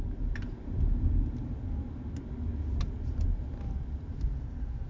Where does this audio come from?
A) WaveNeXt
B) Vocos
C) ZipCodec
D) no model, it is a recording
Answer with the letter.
D